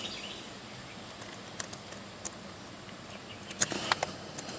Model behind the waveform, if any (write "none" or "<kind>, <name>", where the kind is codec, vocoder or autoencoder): none